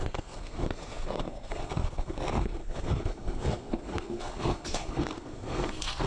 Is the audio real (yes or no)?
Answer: no